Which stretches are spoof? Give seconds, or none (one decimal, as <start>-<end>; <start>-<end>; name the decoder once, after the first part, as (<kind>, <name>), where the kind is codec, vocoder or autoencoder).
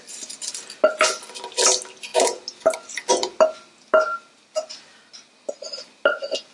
none